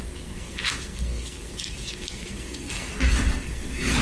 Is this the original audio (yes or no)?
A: no